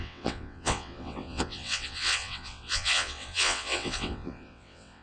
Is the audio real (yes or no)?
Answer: no